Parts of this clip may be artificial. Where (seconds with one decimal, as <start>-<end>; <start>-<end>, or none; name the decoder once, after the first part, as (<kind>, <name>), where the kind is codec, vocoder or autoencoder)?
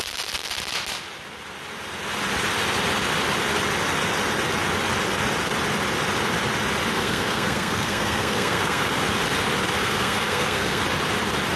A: 6.9-9.0 (codec, SNAC); 9.8-10.8